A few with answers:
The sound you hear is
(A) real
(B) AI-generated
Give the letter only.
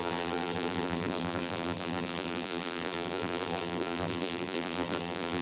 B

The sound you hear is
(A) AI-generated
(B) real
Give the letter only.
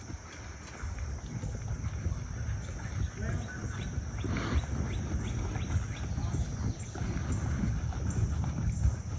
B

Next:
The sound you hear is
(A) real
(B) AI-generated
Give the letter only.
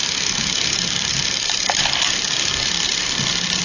A